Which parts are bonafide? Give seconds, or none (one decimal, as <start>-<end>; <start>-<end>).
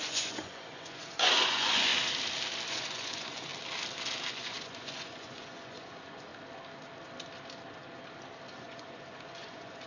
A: 1.9-2.7; 3.5-4.3; 6.3-8.6